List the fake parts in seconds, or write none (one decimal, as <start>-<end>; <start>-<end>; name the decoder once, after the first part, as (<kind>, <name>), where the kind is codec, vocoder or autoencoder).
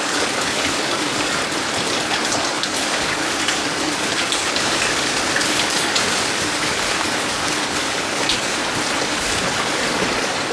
0.0-1.4 (codec, DAC); 2.4-8.6; 9.1-10.5